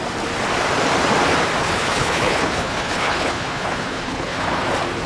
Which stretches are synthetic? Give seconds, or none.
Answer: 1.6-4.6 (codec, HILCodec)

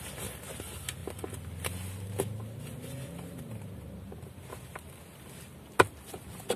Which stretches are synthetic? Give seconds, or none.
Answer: none

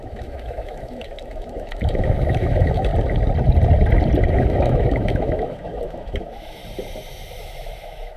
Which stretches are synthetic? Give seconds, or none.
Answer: 0.0-2.9 (autoencoder, DAC-VAE); 4.3-6.6; 7.4-8.2

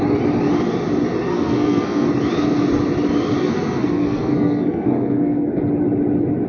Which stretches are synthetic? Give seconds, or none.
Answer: 1.3-2.1 (codec, SNAC); 3.4-5.6

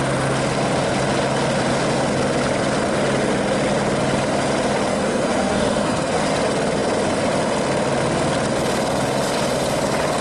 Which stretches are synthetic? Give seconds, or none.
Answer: 4.9-6.2 (codec, SNAC)

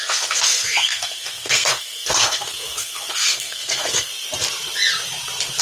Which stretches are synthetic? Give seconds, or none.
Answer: 0.0-4.1 (codec, SNAC)